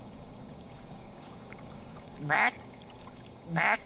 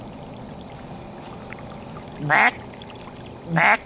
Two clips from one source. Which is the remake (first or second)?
first